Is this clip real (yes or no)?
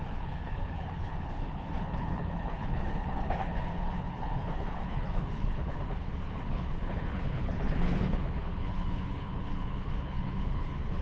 no